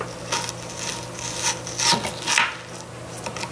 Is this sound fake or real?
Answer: real